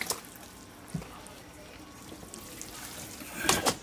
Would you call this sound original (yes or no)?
yes